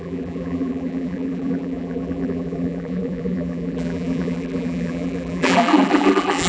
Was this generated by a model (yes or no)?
yes